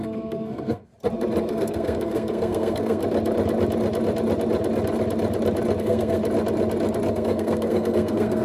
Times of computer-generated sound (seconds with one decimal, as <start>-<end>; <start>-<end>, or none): 0.0-0.9; 1.5-3.0; 5.8-6.2; 7.1-8.4